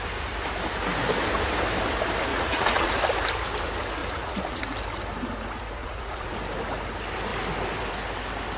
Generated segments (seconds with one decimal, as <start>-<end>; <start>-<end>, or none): 2.3-2.9; 4.0-4.6; 5.8-6.4

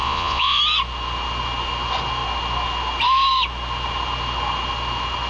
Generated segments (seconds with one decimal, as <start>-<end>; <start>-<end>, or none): 0.0-0.6

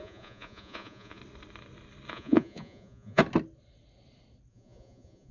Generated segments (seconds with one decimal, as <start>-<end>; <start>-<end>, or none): 0.0-1.2; 2.1-3.2; 4.5-5.3

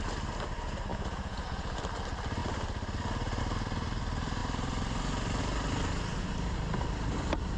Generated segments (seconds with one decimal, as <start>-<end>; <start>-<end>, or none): 0.9-1.8

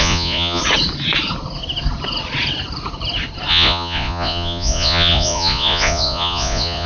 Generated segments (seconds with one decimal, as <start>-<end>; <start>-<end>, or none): 0.0-0.6; 3.5-6.9

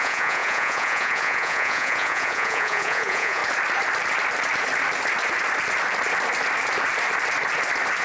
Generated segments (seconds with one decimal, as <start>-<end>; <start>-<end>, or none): 0.0-3.4

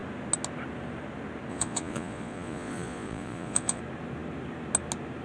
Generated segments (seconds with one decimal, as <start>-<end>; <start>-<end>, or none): 1.5-3.8